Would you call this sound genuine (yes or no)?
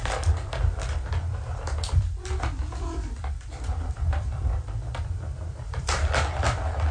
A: no